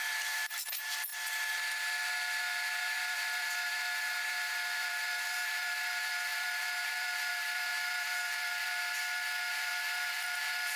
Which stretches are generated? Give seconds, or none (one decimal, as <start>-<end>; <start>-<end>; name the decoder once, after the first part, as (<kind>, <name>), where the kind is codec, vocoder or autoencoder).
0.0-1.1 (vocoder, BigVGAN v2); 2.4-8.9; 9.4-10.8